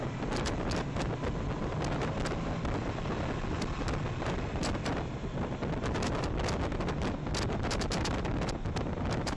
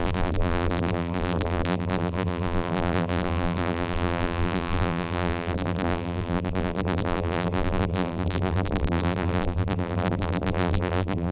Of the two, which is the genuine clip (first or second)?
first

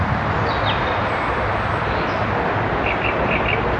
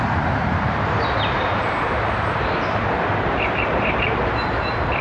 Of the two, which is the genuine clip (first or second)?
first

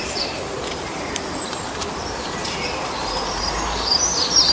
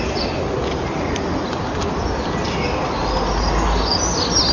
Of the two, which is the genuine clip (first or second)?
second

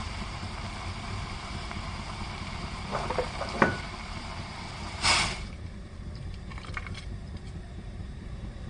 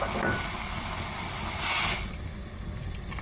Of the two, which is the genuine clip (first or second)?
second